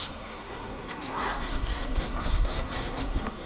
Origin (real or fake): fake